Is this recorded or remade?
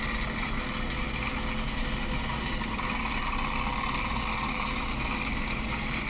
recorded